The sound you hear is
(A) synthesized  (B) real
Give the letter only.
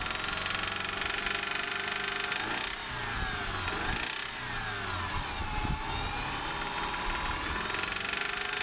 B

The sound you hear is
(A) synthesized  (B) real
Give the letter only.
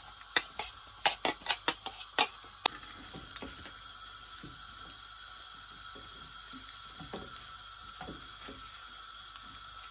B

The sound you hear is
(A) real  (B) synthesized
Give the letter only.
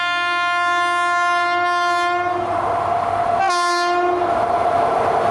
A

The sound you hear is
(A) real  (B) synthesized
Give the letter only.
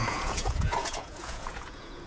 B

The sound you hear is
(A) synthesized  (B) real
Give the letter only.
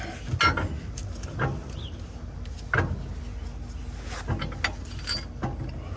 B